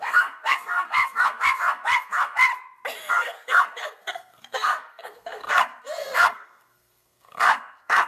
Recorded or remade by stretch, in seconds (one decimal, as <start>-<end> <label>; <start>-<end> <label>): 0.0-2.5 remade; 2.5-3.1 recorded; 3.1-8.1 remade